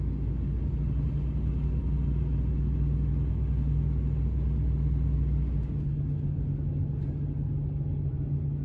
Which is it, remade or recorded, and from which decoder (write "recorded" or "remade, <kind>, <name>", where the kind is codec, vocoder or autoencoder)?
recorded